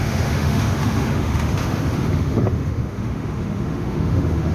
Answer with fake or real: fake